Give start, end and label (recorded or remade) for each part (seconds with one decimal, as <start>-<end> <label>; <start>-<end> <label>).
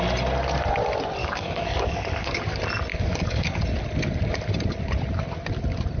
0.0-1.2 recorded; 1.2-2.4 remade; 2.4-2.9 recorded; 2.9-3.6 remade; 3.6-6.0 recorded